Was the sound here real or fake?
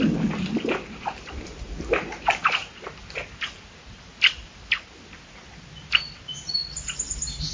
real